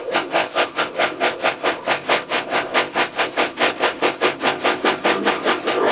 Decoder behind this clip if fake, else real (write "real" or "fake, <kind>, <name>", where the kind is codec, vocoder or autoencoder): fake, codec, ZipCodec